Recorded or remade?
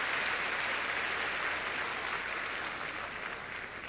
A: recorded